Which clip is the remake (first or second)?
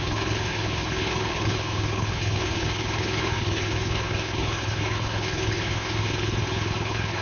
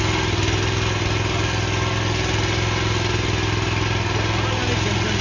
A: first